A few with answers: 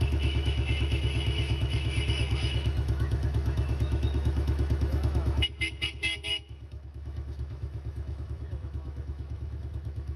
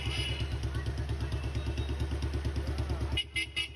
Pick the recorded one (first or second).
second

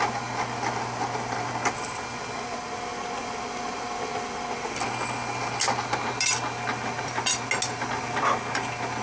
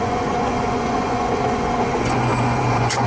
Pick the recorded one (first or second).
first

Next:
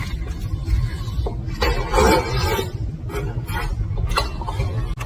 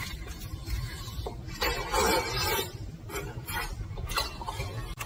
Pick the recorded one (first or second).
first